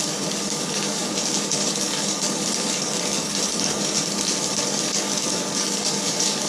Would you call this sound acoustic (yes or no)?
no